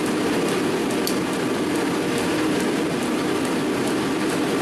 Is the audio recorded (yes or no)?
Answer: yes